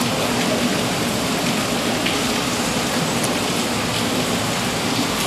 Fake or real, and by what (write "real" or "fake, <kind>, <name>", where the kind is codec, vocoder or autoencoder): real